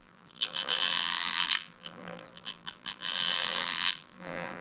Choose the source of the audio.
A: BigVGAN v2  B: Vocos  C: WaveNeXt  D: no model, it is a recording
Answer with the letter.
A